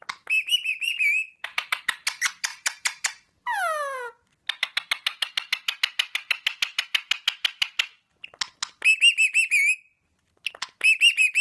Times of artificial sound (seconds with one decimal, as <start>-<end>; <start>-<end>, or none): 2.5-3.4